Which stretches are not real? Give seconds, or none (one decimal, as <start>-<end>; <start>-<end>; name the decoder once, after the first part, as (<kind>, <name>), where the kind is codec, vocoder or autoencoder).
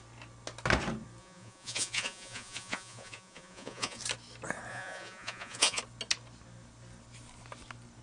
1.2-4.0 (vocoder, Vocos); 4.7-5.8